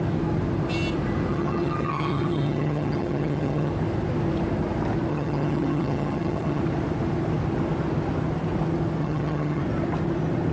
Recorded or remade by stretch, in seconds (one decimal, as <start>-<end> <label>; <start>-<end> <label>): 0.0-1.3 recorded; 1.3-3.7 remade; 3.7-5.1 recorded; 5.1-6.6 remade; 6.6-9.0 recorded; 9.0-9.6 remade; 9.6-10.5 recorded